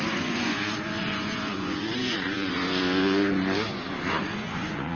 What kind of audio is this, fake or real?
fake